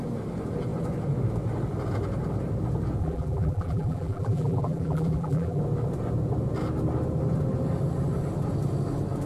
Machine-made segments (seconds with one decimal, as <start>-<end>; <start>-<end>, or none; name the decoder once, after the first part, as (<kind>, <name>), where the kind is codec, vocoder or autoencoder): 3.0-5.6 (vocoder, BigVGAN v2)